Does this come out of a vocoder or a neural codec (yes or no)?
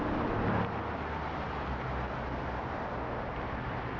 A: no